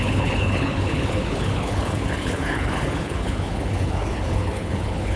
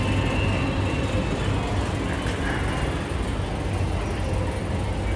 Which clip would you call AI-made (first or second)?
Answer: first